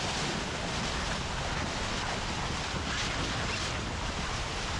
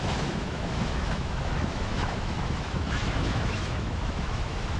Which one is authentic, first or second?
first